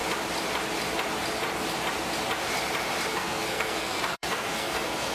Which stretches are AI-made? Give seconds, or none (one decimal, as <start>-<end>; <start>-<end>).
3.1-5.1

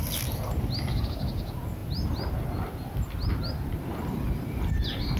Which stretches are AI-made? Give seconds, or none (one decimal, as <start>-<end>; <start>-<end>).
none